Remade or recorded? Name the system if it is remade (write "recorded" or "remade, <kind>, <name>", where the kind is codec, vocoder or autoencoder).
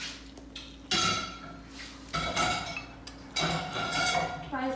recorded